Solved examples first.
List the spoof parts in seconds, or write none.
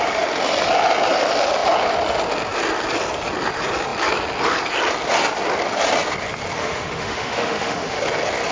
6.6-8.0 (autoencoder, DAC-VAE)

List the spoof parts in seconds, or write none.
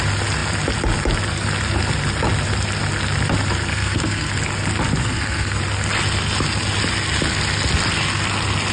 3.7-4.3 (codec, SNAC); 5.0-5.6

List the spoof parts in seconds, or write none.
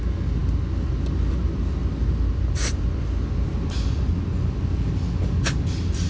none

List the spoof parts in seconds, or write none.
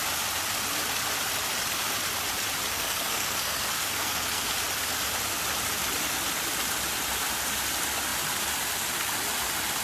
2.7-4.5 (codec, SNAC)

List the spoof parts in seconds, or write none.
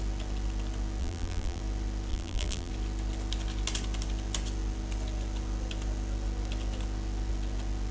1.0-1.6 (vocoder, BigVGAN v2); 2.1-2.7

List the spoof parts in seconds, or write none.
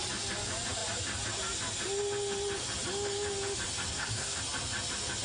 3.9-4.4 (codec, SNAC)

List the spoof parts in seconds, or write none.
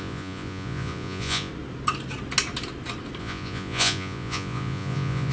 0.0-1.5 (vocoder, Vocos); 3.2-5.3